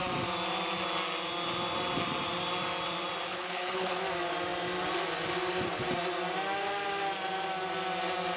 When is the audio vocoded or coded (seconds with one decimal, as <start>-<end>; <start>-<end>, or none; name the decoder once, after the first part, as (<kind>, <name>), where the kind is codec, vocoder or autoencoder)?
3.3-4.0 (codec, HILCodec)